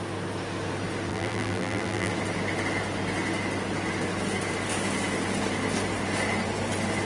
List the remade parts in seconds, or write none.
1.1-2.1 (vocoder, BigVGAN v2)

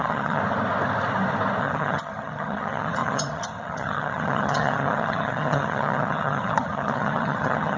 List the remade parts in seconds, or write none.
0.0-0.4 (vocoder, HiFi-GAN); 1.6-7.8